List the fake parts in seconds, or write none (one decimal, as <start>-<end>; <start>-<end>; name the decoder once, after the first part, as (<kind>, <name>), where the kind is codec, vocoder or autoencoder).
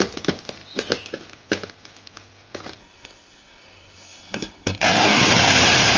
2.8-5.3 (codec, SNAC)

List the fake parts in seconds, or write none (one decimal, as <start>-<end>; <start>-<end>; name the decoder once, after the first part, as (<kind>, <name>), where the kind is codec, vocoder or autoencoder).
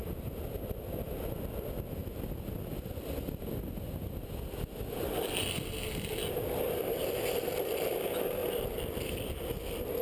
none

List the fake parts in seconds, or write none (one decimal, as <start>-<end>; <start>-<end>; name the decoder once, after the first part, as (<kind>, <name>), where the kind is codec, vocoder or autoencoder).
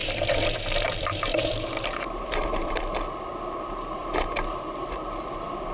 0.0-2.8 (vocoder, BigVGAN v2); 4.0-5.3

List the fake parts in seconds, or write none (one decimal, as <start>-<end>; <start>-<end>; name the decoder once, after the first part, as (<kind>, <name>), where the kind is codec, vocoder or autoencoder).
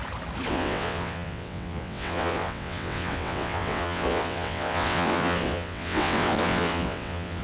0.5-7.4 (vocoder, WaveNeXt)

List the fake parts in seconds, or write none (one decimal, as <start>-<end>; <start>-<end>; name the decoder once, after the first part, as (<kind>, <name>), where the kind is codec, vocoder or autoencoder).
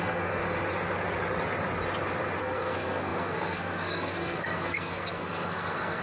0.0-0.4 (codec, SNAC); 2.4-6.0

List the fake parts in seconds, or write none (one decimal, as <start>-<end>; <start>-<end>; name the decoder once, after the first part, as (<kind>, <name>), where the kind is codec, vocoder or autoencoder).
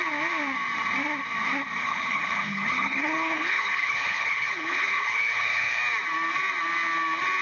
1.8-5.8 (codec, HILCodec)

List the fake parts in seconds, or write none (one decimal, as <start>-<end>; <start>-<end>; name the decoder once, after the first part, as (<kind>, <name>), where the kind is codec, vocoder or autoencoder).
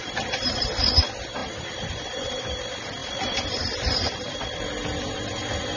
1.4-2.4 (vocoder, BigVGAN v2); 3.0-4.2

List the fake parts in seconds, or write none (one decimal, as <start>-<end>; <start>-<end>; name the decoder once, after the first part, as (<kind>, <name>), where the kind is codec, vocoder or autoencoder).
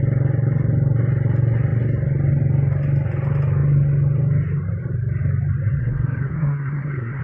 5.8-7.2 (codec, SNAC)